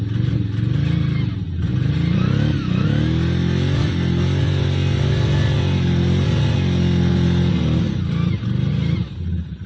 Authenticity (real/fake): real